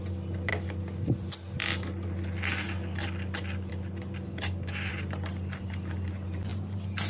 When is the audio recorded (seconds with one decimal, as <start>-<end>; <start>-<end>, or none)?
0.0-4.3; 4.9-7.1